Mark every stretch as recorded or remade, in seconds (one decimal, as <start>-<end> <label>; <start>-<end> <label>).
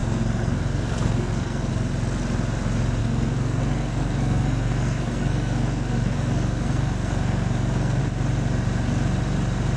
0.0-1.7 remade; 1.7-3.0 recorded; 3.0-8.0 remade; 8.0-9.8 recorded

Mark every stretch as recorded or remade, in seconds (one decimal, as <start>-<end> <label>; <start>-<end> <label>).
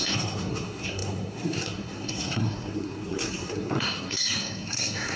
0.0-5.2 remade